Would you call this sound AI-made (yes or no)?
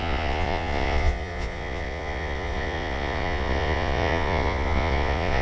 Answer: yes